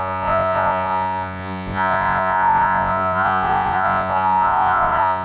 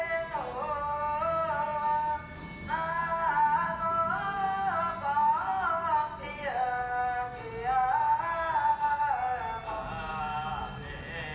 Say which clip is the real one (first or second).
second